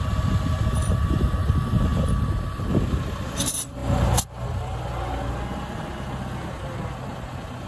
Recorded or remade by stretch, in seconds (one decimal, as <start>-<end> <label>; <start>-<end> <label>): 0.0-7.7 recorded